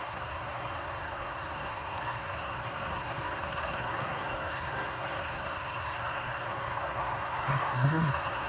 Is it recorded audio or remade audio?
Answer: remade